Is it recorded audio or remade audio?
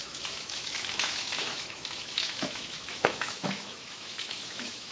remade